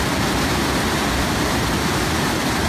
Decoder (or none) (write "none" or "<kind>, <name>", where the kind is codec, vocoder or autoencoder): none